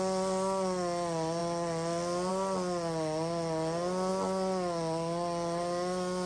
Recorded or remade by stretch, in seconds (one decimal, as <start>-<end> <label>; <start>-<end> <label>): 0.0-6.3 recorded